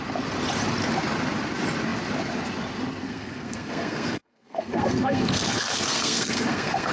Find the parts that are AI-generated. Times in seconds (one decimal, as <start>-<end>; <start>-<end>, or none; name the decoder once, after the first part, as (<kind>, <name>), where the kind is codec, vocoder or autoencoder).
3.0-6.9 (codec, SNAC)